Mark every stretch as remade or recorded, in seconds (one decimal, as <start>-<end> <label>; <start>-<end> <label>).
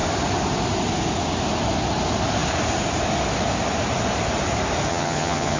0.0-4.9 recorded; 4.9-5.6 remade